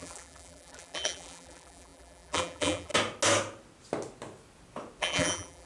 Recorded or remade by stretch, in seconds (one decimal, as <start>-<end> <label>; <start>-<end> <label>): 0.0-2.9 remade; 2.9-5.0 recorded; 5.0-5.7 remade